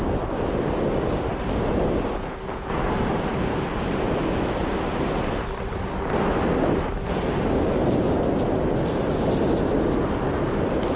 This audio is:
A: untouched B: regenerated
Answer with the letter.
A